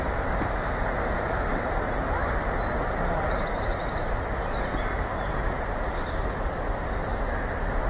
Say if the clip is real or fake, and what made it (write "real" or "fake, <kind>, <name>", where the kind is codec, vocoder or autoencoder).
fake, vocoder, BigVGAN v2